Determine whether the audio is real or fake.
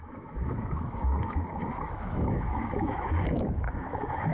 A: fake